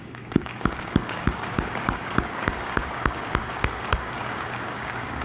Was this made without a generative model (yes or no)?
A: no